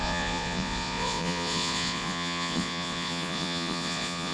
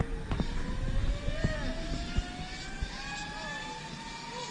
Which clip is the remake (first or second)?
first